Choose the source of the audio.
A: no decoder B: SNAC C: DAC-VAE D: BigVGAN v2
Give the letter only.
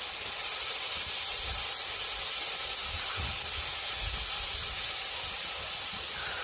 A